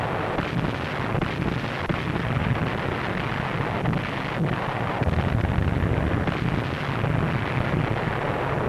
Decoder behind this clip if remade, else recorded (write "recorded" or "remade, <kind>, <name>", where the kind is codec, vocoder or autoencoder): recorded